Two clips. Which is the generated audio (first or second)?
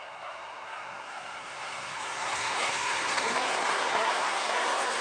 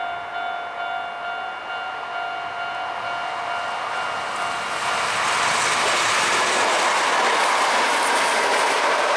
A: first